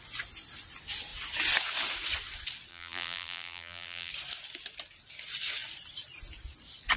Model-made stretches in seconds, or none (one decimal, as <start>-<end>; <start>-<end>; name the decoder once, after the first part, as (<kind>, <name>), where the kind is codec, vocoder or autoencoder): 2.7-4.1 (vocoder, BigVGAN v2)